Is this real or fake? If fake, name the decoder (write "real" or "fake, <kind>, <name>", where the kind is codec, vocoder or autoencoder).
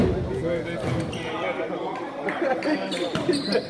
real